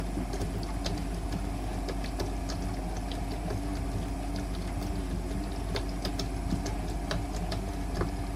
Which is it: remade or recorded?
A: recorded